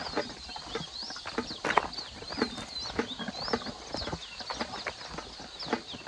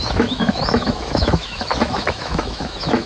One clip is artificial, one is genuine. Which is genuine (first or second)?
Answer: first